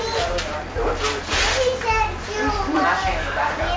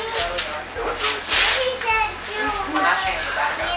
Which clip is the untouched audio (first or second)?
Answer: second